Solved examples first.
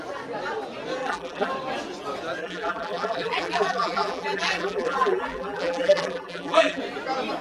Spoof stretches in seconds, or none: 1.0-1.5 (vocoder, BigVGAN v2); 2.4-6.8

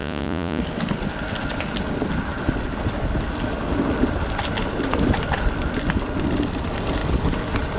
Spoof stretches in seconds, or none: 0.0-0.6 (vocoder, Vocos)